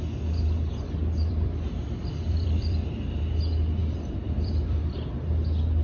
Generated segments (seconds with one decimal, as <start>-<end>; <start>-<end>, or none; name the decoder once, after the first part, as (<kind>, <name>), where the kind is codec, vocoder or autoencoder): 1.0-3.2 (vocoder, BigVGAN v2); 3.8-4.8